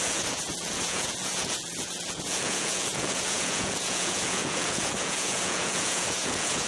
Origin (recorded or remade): remade